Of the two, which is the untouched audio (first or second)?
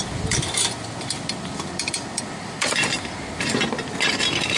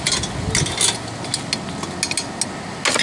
second